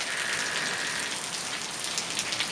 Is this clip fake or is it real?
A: real